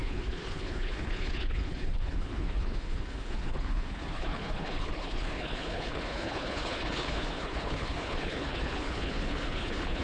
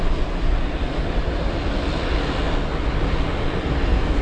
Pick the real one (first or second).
second